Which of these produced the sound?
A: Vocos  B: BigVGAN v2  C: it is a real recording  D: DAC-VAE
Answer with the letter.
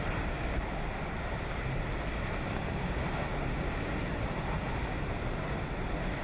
C